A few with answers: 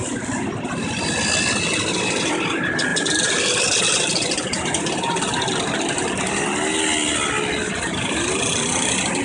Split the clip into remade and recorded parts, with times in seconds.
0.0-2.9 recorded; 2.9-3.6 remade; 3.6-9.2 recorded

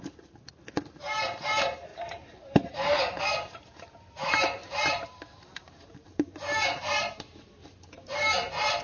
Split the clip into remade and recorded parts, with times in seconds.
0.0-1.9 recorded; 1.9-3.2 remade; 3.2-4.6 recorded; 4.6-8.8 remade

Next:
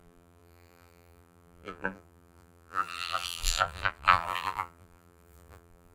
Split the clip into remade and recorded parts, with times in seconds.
0.0-5.9 remade

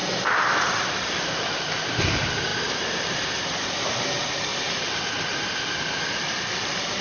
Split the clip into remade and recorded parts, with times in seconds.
0.0-0.9 recorded; 0.9-4.5 remade; 4.5-6.0 recorded; 6.0-7.0 remade

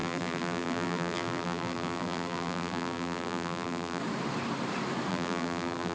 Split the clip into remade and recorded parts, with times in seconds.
0.0-4.0 remade; 4.0-5.1 recorded; 5.1-5.9 remade

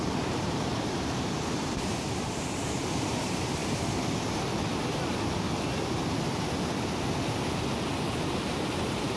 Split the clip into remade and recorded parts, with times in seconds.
0.0-3.6 remade; 3.6-8.2 recorded; 8.2-9.2 remade

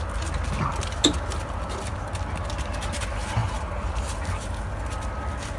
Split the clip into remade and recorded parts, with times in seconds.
0.0-5.6 recorded